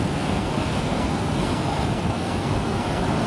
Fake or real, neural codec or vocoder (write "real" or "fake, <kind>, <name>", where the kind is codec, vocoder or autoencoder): fake, codec, SNAC